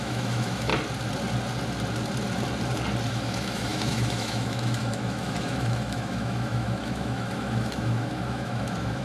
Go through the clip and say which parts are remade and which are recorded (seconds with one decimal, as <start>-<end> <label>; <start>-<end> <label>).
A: 0.0-0.7 remade; 0.7-3.1 recorded; 3.1-9.0 remade